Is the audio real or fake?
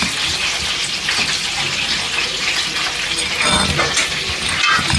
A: real